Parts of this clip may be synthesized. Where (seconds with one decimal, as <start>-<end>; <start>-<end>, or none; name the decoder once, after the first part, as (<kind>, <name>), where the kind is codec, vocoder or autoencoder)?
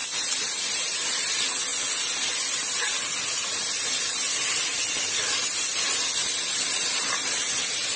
4.7-8.0 (vocoder, BigVGAN v2)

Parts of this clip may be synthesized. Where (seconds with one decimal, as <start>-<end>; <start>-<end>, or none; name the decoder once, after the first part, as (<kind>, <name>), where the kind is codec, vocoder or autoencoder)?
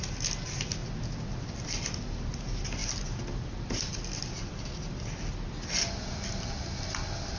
none